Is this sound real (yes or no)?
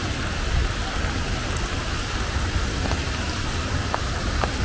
yes